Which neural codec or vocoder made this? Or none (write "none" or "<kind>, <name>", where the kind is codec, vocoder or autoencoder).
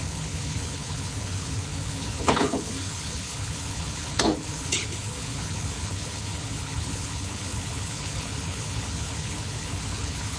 codec, HILCodec